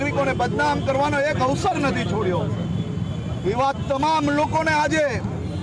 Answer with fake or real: real